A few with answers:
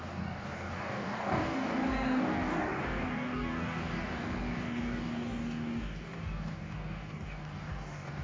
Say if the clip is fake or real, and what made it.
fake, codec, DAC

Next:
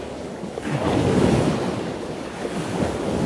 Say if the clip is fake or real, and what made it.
fake, codec, DAC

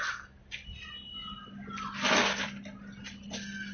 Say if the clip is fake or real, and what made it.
real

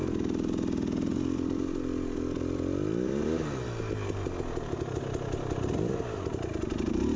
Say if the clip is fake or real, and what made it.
real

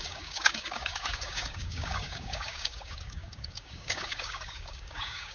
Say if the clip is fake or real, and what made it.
fake, codec, DAC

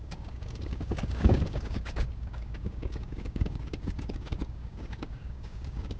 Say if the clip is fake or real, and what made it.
fake, codec, DAC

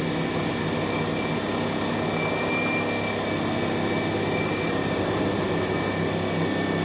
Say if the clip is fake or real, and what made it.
real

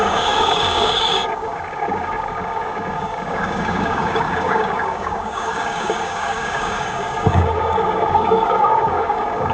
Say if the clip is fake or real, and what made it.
fake, codec, DAC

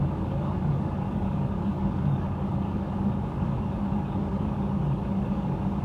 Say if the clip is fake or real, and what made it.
fake, codec, DAC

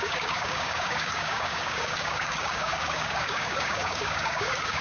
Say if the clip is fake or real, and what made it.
fake, codec, DAC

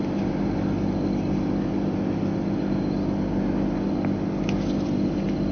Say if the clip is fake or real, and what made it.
real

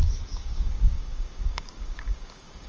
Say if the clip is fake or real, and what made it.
fake, codec, DAC